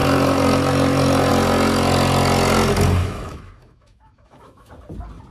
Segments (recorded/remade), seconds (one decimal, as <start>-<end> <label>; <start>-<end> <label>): 0.0-3.0 recorded; 3.0-4.7 remade; 4.7-5.3 recorded